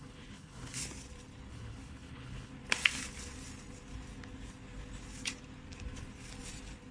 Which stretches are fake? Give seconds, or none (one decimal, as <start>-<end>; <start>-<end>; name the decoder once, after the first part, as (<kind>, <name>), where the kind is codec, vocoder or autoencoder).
0.0-0.8 (codec, HILCodec); 1.5-2.5